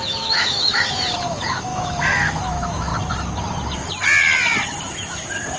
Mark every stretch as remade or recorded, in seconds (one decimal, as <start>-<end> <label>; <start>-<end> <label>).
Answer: 0.0-2.9 remade; 2.9-4.8 recorded; 4.8-5.6 remade